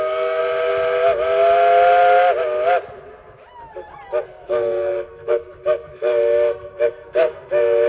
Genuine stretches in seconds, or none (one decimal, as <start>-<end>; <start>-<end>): 0.4-4.2